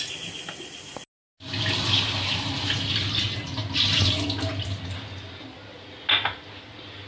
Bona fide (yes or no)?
yes